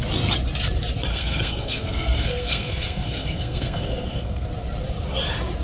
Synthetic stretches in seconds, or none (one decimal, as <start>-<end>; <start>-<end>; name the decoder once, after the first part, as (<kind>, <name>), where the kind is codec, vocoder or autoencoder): 1.1-4.5 (codec, SNAC)

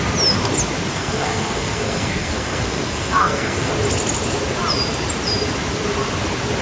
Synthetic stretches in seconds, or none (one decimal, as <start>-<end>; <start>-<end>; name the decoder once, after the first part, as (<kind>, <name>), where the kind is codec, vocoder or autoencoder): 0.9-3.7 (codec, SNAC)